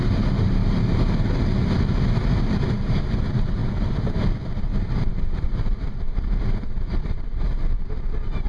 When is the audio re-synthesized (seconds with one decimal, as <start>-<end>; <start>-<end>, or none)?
0.0-0.6; 2.4-3.6; 4.9-8.5

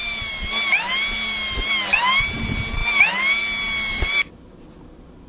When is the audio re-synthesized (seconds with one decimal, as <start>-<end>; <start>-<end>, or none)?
3.9-4.5

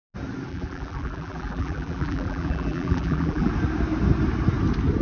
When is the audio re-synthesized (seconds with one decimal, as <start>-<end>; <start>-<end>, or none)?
0.5-3.5

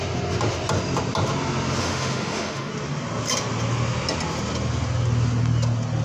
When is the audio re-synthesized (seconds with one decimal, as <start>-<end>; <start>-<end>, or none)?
1.8-2.7

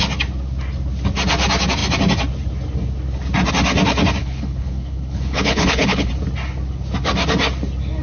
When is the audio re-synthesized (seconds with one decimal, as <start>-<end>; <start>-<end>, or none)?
4.2-6.1

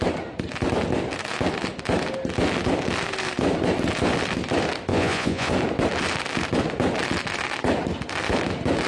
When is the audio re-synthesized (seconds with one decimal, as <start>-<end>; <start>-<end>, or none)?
4.9-5.5

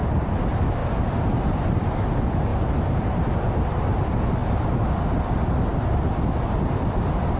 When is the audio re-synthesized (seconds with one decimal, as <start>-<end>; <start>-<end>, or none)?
none

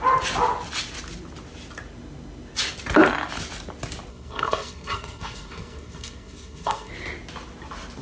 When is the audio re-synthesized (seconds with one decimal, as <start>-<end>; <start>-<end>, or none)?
4.1-6.9